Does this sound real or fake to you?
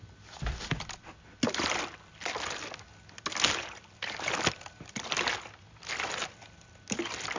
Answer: real